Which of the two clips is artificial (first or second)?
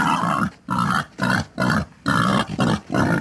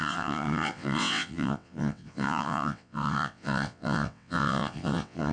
second